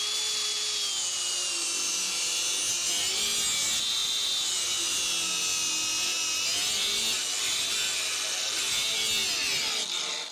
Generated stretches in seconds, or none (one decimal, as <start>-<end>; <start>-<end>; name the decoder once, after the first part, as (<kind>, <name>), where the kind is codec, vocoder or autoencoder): 0.5-1.2 (vocoder, Vocos)

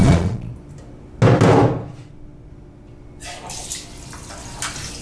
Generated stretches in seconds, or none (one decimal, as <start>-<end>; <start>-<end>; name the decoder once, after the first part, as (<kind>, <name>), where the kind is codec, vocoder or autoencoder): 0.0-0.5 (vocoder, Vocos)